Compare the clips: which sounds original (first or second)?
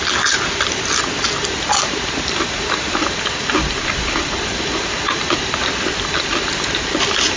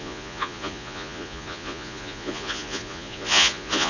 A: first